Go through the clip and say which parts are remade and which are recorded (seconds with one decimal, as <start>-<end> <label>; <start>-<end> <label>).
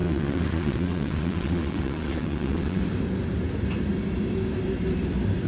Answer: 0.0-2.8 remade; 2.8-5.5 recorded